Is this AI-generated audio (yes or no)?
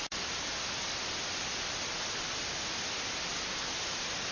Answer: no